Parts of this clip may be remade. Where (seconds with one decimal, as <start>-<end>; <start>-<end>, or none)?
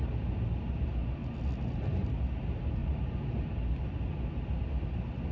2.8-3.5